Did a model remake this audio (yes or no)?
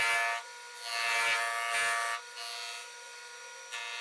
no